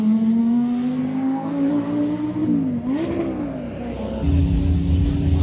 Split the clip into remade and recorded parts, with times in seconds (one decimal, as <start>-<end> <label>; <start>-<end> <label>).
0.0-0.4 recorded; 0.4-1.7 remade; 1.7-5.4 recorded